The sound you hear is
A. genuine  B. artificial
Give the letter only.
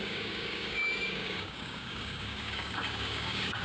B